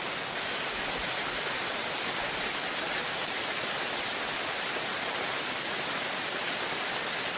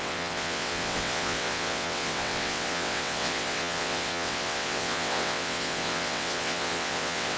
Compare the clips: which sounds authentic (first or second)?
first